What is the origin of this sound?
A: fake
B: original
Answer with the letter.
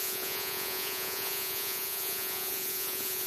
A